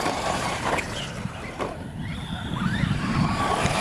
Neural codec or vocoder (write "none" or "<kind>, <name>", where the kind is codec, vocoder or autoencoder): vocoder, BigVGAN v2